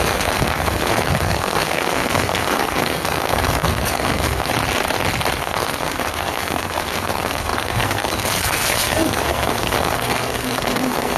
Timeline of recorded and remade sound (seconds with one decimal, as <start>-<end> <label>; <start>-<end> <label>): 0.0-4.5 remade; 4.5-5.4 recorded; 5.4-11.2 remade

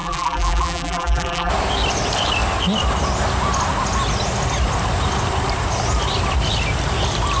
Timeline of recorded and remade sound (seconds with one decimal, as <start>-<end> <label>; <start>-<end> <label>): 0.0-1.5 remade; 1.5-7.4 recorded

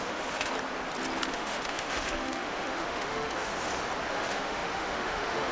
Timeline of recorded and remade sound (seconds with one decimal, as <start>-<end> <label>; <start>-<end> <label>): 0.0-0.5 remade; 0.5-1.3 recorded; 1.3-3.5 remade; 3.5-4.1 recorded; 4.1-5.5 remade

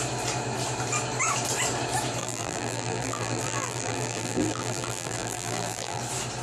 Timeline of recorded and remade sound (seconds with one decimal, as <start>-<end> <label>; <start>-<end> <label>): 0.0-2.2 recorded; 2.2-6.0 remade; 6.0-6.4 recorded

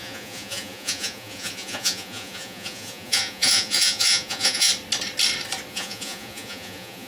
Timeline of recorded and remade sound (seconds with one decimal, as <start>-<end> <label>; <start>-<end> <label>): 0.0-4.7 remade; 4.7-5.7 recorded; 5.7-7.1 remade

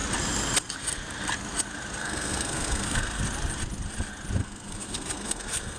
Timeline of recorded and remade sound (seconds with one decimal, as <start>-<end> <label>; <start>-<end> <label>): 0.0-2.0 recorded; 2.0-3.2 remade; 3.2-4.4 recorded; 4.4-5.8 remade